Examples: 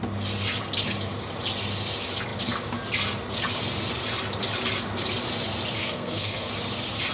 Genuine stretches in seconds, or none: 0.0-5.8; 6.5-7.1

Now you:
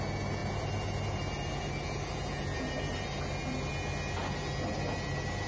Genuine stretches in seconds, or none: 0.0-5.5

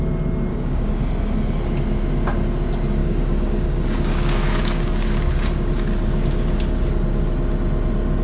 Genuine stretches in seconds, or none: 0.0-0.5; 1.0-3.0; 5.7-8.2

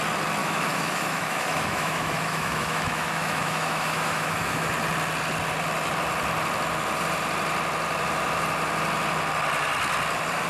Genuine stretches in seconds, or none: 0.0-0.4; 4.7-10.5

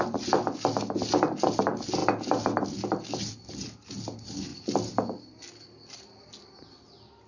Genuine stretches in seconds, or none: 0.0-7.3

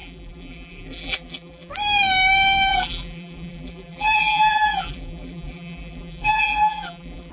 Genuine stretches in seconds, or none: 1.7-2.7

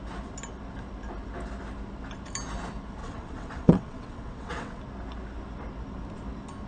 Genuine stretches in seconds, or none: 0.0-3.0; 4.8-6.7

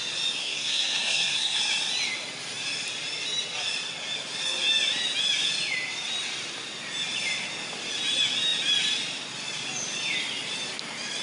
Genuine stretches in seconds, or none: 0.0-0.4; 1.6-11.2